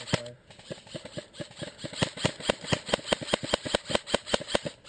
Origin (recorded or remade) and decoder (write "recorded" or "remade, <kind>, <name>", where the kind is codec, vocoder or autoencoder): recorded